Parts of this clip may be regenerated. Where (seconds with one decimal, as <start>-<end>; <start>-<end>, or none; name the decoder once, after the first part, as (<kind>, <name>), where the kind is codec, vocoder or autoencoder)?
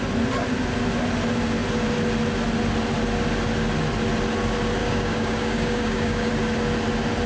4.8-6.3 (codec, DAC)